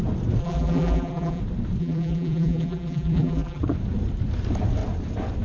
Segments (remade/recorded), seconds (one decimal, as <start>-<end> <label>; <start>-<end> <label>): 0.0-0.4 recorded; 0.4-1.4 remade; 1.4-1.8 recorded; 1.8-3.6 remade; 3.6-5.4 recorded